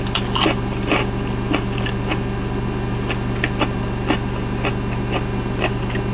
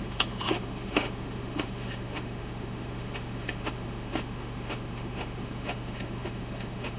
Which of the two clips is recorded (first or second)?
first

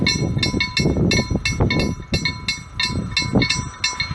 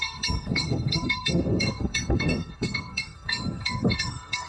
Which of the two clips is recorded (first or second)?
first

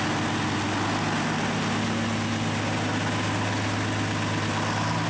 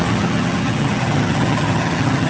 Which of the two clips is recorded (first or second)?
first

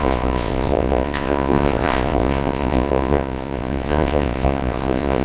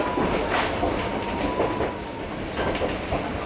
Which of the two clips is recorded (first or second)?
second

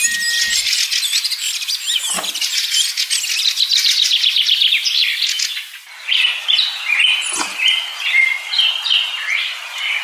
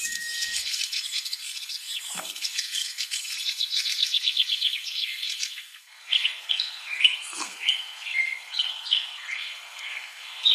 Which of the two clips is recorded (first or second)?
first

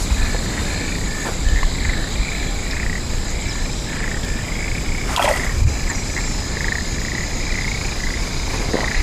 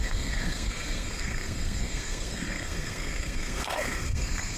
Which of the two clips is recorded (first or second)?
first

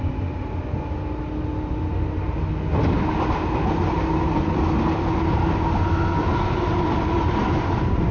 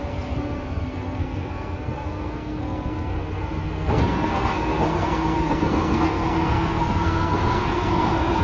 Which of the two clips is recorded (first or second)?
first